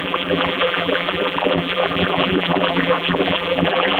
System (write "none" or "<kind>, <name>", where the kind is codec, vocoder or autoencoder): vocoder, BigVGAN v2